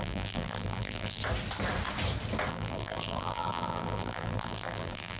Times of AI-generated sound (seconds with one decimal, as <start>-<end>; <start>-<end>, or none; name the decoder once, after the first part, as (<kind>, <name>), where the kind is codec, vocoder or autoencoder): 0.0-1.2 (vocoder, BigVGAN v2); 2.5-5.2